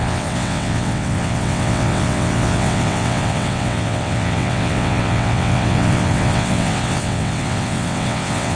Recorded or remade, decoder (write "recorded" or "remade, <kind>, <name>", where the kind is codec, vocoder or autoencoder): remade, vocoder, WaveNeXt